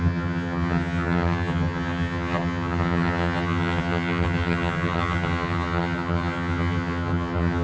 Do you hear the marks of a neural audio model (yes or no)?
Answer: yes